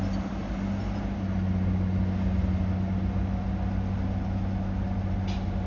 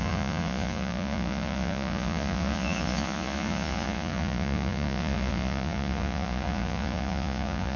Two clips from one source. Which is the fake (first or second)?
second